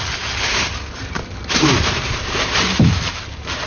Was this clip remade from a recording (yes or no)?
yes